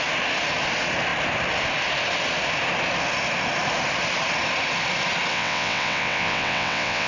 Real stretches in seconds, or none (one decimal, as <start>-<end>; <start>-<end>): 0.0-5.3